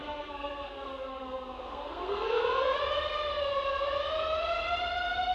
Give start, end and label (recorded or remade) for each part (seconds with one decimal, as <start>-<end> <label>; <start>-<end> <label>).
0.0-2.8 remade; 2.8-5.3 recorded